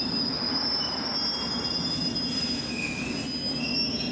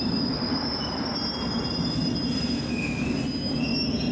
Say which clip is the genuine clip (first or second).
first